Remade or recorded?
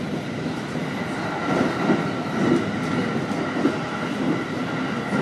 recorded